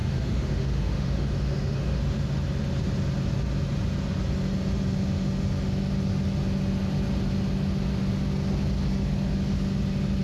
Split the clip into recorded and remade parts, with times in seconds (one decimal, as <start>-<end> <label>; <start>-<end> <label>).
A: 0.0-2.0 remade; 2.0-10.2 recorded